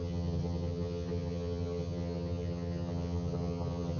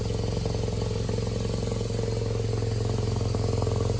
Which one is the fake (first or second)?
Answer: first